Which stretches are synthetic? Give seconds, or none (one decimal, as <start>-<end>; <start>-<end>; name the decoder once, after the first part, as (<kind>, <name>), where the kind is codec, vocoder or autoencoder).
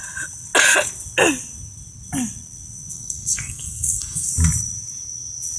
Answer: 2.9-4.3 (codec, SNAC)